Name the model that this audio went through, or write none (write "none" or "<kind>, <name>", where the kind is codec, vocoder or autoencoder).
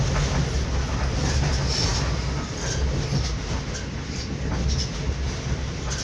none